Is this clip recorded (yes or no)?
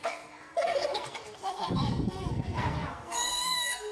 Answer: no